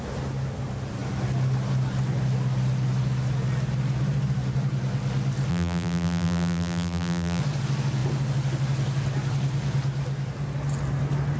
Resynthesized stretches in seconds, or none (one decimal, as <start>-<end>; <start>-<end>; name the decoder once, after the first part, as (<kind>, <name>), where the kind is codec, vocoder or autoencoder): 5.5-7.4 (vocoder, BigVGAN v2)